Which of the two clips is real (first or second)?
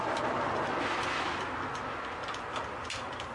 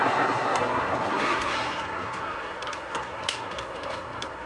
first